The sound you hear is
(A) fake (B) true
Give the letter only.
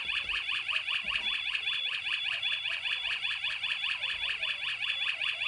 A